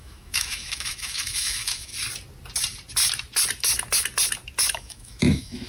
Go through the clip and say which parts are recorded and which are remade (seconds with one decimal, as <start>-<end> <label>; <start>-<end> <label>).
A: 0.0-1.9 remade; 1.9-4.7 recorded; 4.7-5.7 remade